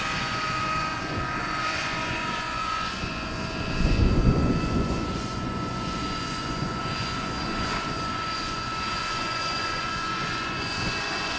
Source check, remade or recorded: remade